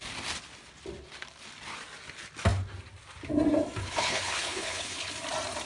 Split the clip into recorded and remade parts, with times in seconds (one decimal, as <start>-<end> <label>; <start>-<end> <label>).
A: 0.0-3.8 recorded; 3.8-5.1 remade; 5.1-5.7 recorded